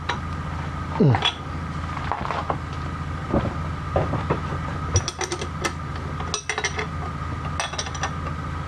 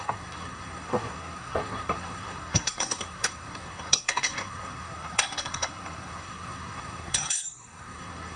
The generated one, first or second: second